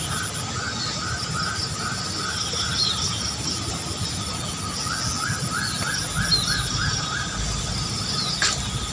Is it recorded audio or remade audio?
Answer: recorded